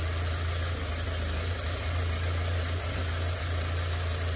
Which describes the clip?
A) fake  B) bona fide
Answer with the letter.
B